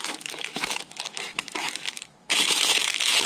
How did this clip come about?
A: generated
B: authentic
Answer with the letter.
A